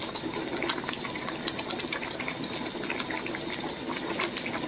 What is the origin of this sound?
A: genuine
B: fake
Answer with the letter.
A